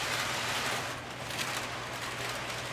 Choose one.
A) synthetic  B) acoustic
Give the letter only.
B